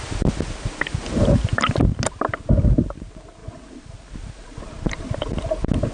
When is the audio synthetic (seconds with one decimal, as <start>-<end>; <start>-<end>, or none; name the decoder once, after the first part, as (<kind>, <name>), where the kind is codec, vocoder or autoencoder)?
none